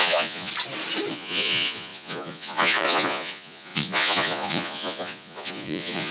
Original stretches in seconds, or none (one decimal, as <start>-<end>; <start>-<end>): 0.5-1.1